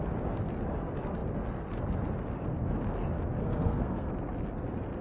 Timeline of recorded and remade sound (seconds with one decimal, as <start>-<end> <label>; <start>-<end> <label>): 0.0-3.4 recorded; 3.4-4.1 remade; 4.1-5.0 recorded